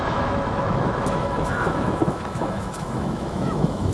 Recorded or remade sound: remade